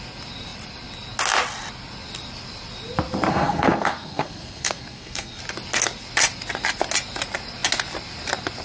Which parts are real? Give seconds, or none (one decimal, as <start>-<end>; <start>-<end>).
0.0-3.3; 5.4-8.6